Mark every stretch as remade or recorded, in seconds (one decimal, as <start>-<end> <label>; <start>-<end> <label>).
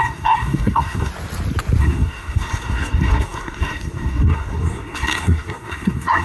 0.0-1.1 remade; 1.1-1.8 recorded; 1.8-6.2 remade